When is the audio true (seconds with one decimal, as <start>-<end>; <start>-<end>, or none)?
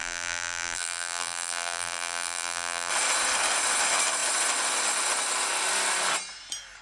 2.9-6.8